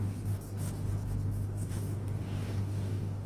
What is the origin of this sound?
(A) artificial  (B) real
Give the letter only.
A